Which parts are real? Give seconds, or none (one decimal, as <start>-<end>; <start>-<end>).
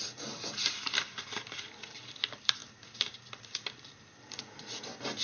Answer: 2.6-5.2